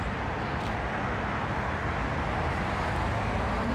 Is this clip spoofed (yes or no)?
no